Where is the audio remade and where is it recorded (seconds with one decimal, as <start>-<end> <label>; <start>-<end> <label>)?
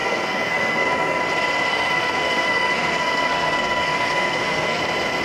0.0-1.2 remade; 1.2-1.7 recorded; 1.7-4.8 remade; 4.8-5.2 recorded